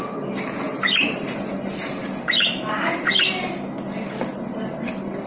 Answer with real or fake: real